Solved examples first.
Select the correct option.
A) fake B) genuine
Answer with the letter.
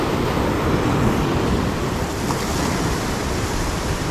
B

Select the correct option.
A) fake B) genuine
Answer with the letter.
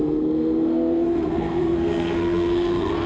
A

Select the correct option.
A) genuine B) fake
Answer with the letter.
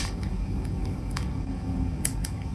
B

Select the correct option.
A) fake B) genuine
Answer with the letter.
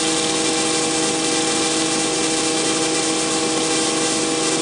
B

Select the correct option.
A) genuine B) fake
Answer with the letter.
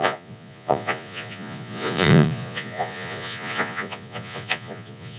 B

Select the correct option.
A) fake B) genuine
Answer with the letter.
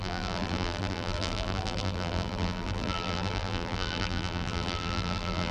A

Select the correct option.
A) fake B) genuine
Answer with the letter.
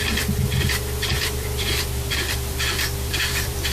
A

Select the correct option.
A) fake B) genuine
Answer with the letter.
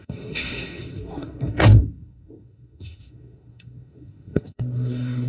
A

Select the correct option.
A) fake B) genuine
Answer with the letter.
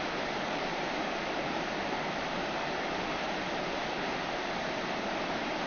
A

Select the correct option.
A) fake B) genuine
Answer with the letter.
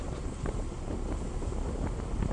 B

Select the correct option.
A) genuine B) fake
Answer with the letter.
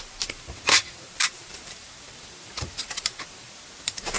B